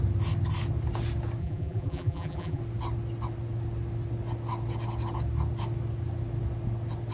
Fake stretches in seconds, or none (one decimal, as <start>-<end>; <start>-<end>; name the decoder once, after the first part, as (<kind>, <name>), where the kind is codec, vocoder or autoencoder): 1.4-2.6 (vocoder, BigVGAN v2)